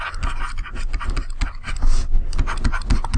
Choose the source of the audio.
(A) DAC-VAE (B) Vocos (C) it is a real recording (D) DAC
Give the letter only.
C